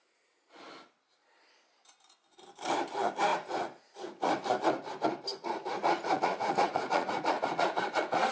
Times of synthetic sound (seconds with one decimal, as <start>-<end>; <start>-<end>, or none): 3.3-4.3; 5.3-8.3